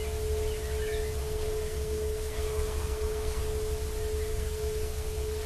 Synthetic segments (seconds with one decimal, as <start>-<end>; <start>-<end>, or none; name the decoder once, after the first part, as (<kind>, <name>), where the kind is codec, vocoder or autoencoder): 1.2-3.4 (codec, SNAC); 4.3-5.5